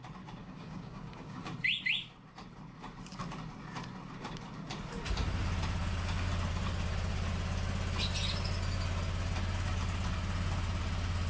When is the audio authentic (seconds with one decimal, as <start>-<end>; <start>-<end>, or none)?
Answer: 0.0-0.4; 1.5-11.3